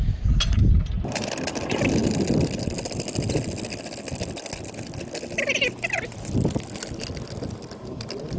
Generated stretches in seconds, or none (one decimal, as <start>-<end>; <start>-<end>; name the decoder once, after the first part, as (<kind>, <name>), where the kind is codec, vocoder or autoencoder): none